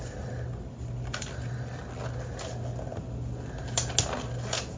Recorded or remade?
recorded